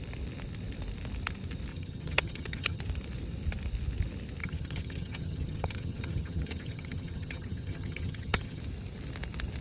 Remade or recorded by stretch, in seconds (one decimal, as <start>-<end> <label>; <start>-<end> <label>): 0.0-1.7 recorded; 1.7-2.8 remade; 2.8-4.4 recorded; 4.4-8.6 remade; 8.6-9.6 recorded

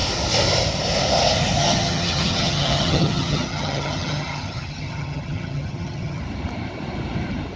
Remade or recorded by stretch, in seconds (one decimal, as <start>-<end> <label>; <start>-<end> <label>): 0.0-1.6 recorded; 1.6-6.2 remade; 6.2-7.6 recorded

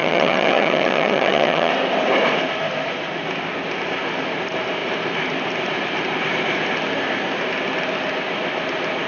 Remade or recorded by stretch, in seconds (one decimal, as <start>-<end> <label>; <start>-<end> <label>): 0.0-1.7 remade; 1.7-9.1 recorded